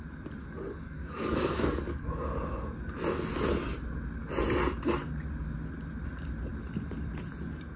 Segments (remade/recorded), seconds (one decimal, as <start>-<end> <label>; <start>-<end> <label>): 0.0-0.4 recorded; 0.4-2.3 remade; 2.3-7.8 recorded